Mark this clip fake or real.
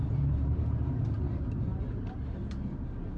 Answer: real